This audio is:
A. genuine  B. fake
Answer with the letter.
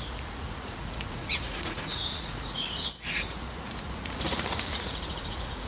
B